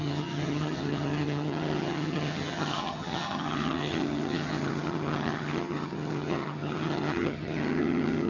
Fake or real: fake